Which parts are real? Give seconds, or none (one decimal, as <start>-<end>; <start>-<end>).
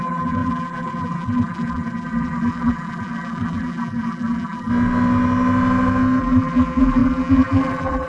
4.7-6.2